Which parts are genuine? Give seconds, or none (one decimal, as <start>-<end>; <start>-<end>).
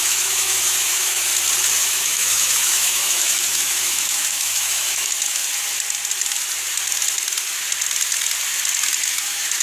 1.3-1.8; 5.4-9.1